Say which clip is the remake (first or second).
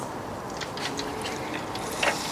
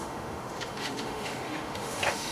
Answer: second